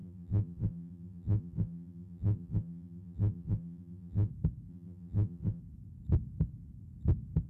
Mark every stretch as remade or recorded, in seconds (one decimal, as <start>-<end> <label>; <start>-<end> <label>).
0.0-4.3 remade; 4.3-4.7 recorded; 4.7-5.6 remade; 5.6-7.5 recorded